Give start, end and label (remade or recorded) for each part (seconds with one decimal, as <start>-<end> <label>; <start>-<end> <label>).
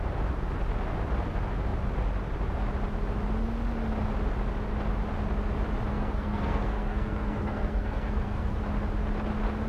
0.0-5.9 recorded; 5.9-8.6 remade; 8.6-9.7 recorded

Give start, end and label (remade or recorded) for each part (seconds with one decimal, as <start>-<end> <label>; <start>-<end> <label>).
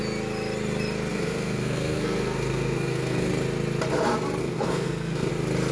0.0-1.1 recorded; 1.1-3.3 remade; 3.3-4.4 recorded; 4.4-5.3 remade; 5.3-5.7 recorded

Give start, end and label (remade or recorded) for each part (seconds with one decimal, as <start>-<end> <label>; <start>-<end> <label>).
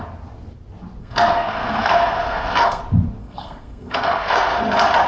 0.0-1.0 recorded; 1.0-2.8 remade; 2.8-3.2 recorded; 3.2-4.6 remade; 4.6-5.1 recorded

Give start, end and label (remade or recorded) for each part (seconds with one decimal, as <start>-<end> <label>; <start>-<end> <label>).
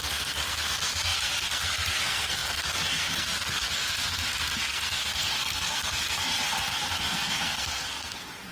0.0-8.5 remade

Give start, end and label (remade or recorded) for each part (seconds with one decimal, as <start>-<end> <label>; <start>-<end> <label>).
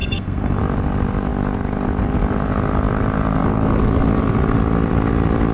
0.0-0.6 remade; 0.6-5.5 recorded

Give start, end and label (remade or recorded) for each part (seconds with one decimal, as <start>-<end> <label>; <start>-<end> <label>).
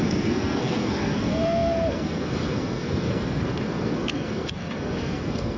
0.0-5.6 remade